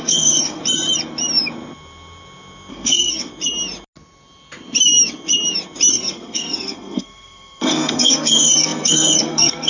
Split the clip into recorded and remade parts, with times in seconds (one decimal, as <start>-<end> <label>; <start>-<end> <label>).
0.0-0.6 remade; 0.6-2.7 recorded; 2.7-3.3 remade; 3.3-5.9 recorded; 5.9-9.7 remade